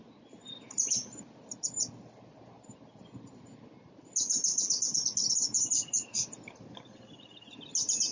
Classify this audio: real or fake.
real